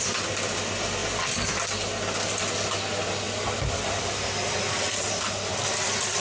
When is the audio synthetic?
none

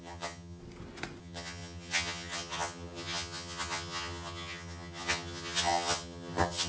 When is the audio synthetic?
0.0-0.6 (vocoder, HiFi-GAN); 1.2-6.7

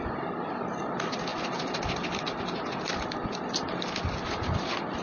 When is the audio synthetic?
none

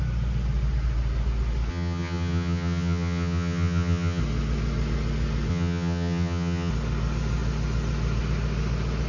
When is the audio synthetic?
1.7-4.2 (vocoder, HiFi-GAN); 5.5-6.7